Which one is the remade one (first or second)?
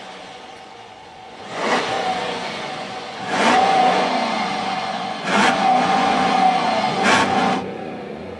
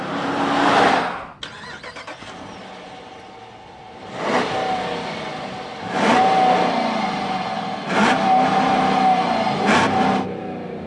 first